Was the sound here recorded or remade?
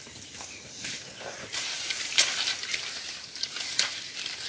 remade